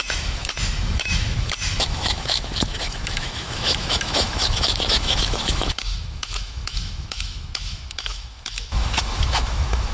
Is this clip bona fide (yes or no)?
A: no